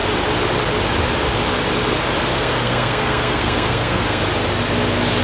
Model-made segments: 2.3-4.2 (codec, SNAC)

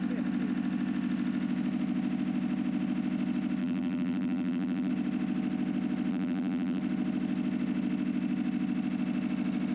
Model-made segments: 3.6-4.9 (vocoder, BigVGAN v2); 6.1-6.8

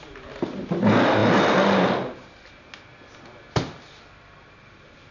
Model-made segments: none

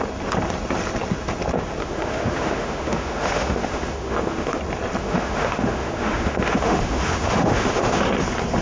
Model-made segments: 1.8-4.6 (autoencoder, DAC-VAE); 5.0-8.0

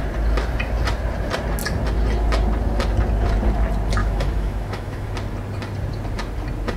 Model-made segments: 4.0-5.1 (autoencoder, DAC-VAE)

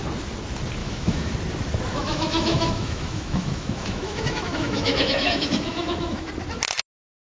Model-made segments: 0.8-1.3 (autoencoder, DAC-VAE); 1.9-6.3